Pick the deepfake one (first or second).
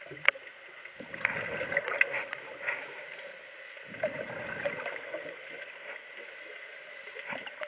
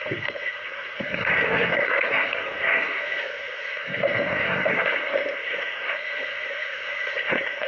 second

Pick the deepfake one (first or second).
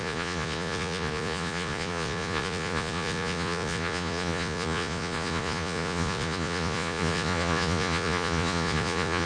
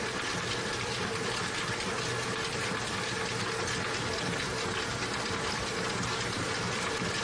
first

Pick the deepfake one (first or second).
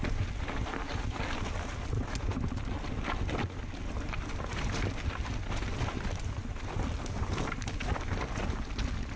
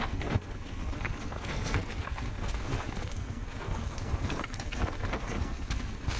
second